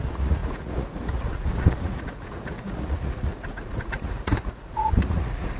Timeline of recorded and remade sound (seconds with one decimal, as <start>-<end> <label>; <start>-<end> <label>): 0.0-5.6 remade